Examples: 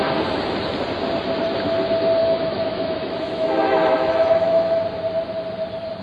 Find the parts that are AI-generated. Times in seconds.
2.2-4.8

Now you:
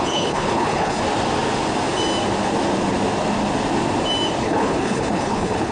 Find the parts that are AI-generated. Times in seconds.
0.0-1.0; 4.4-5.7

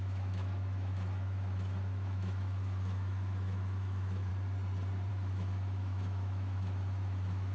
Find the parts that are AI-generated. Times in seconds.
0.0-4.3; 5.1-7.5

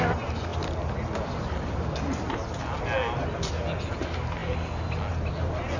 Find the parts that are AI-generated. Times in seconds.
none

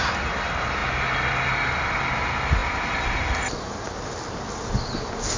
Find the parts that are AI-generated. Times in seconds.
none

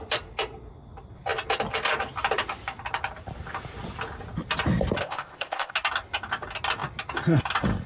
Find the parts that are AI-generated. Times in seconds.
5.0-5.7

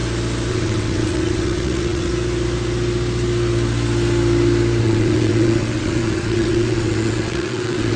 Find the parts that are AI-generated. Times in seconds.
0.5-2.1; 4.8-8.0

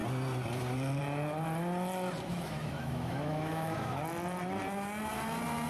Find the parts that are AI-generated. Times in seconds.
2.3-4.0